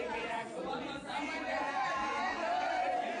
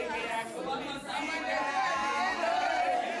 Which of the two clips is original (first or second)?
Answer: second